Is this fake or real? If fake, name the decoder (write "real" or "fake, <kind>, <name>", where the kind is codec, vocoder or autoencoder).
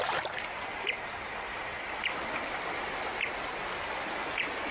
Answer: real